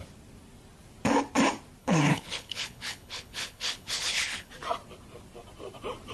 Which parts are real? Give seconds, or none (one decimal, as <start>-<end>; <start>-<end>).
0.0-1.8; 4.5-6.1